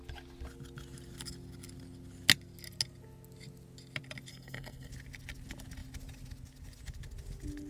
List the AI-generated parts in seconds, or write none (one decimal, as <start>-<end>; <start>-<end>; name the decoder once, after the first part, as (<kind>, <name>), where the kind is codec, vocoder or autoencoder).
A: 4.3-4.9 (codec, SNAC)